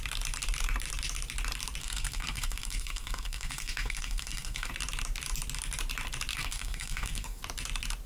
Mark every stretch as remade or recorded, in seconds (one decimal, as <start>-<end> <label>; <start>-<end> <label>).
0.0-1.8 recorded; 1.8-4.7 remade; 4.7-6.3 recorded; 6.3-7.4 remade; 7.4-8.1 recorded

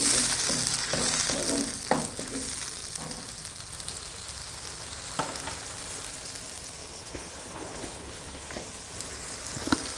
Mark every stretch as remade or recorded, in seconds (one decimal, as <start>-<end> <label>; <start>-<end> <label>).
0.0-7.0 recorded; 7.0-8.5 remade; 8.5-10.0 recorded

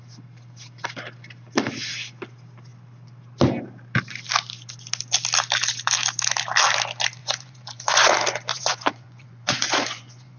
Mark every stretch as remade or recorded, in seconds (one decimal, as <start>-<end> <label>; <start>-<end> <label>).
0.0-7.2 recorded; 7.2-8.1 remade; 8.1-8.5 recorded; 8.5-10.4 remade

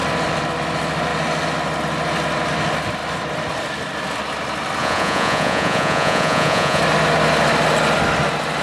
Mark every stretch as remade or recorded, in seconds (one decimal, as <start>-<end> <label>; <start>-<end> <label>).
0.0-4.8 recorded; 4.8-6.8 remade; 6.8-8.6 recorded

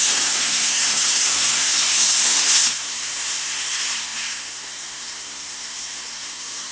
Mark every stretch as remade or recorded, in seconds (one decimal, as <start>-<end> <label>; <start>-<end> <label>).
0.0-6.7 remade

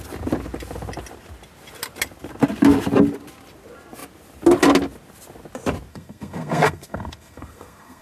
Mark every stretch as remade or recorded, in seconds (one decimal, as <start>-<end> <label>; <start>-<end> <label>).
0.0-5.9 recorded; 5.9-8.0 remade

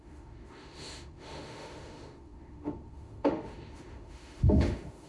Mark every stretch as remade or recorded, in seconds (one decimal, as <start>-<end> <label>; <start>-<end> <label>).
0.0-5.1 remade

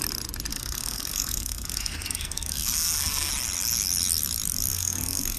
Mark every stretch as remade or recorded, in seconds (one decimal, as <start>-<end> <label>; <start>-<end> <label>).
0.0-0.5 recorded; 0.5-3.3 remade; 3.3-4.7 recorded; 4.7-5.4 remade